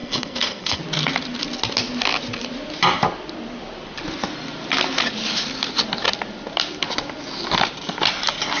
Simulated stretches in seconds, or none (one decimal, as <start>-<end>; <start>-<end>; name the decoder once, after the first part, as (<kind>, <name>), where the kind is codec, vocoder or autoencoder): 0.0-0.8 (codec, SNAC)

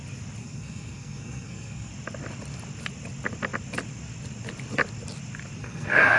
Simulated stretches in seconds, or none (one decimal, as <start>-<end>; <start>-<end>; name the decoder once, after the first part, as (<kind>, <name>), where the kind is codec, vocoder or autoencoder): 0.4-1.9 (codec, SNAC); 5.6-6.2

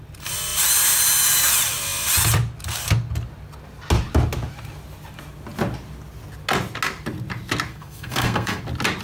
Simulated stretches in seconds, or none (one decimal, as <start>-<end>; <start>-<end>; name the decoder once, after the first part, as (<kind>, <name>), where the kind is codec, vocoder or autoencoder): 7.7-8.6 (codec, SNAC)

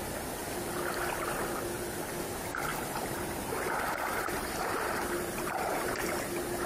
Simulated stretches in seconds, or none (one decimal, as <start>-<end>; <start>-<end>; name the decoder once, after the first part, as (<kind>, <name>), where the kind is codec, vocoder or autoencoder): 2.7-6.1 (vocoder, BigVGAN v2)